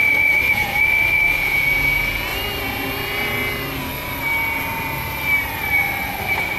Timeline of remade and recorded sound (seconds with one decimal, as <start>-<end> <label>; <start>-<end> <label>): 0.0-1.6 remade; 1.6-6.6 recorded